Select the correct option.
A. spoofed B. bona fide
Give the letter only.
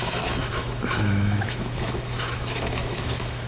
A